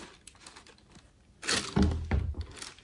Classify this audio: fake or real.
real